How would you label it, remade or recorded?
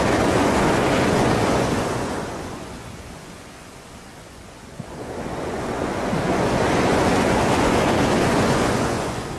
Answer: remade